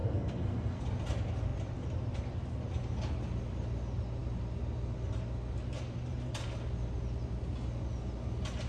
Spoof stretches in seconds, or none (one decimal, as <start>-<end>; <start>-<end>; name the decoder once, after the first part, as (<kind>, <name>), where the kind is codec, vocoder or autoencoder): 0.0-0.8 (codec, SNAC)